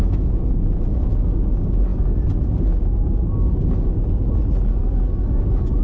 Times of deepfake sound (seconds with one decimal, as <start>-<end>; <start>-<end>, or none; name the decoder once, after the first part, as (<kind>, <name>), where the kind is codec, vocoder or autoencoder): 0.0-1.5 (vocoder, Vocos)